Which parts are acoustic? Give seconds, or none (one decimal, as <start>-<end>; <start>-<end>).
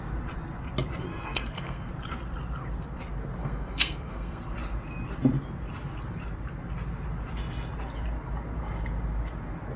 0.0-1.1; 1.9-3.4; 4.4-9.8